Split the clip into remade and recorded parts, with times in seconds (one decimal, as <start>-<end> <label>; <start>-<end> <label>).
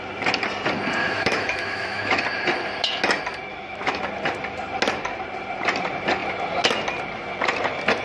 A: 0.0-1.0 recorded; 1.0-2.2 remade; 2.2-3.5 recorded; 3.5-4.0 remade; 4.0-8.0 recorded